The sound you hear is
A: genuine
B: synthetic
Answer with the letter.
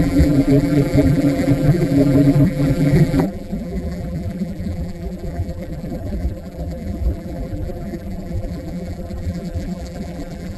B